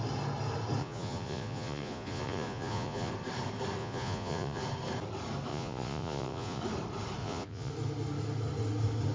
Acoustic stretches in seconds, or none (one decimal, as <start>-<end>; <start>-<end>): 0.0-0.8; 3.1-3.8; 4.6-5.5; 6.6-7.2; 7.7-9.1